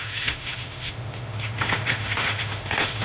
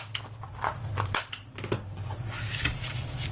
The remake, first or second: first